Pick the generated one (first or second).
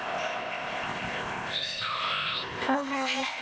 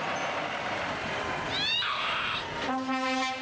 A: first